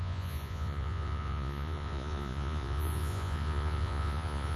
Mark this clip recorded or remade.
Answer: remade